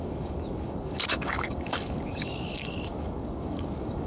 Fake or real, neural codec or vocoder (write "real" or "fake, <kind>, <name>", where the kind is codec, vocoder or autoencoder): fake, codec, DAC